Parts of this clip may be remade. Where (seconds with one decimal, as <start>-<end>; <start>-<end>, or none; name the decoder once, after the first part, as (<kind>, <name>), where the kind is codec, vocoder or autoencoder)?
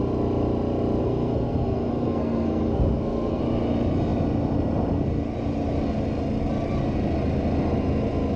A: 1.0-3.4 (codec, SNAC)